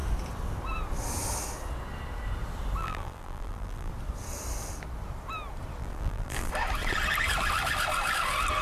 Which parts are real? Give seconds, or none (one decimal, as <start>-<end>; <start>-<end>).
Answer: 0.0-2.8; 3.9-5.8; 6.5-8.6